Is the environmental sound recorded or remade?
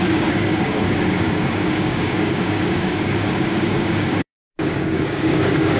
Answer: remade